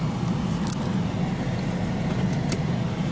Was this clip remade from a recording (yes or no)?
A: no